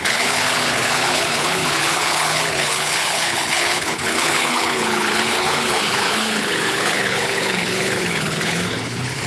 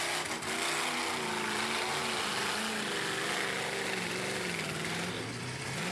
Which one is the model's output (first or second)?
first